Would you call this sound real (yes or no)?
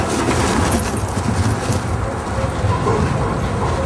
yes